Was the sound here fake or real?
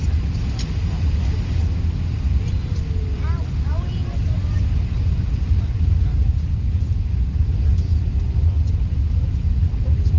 real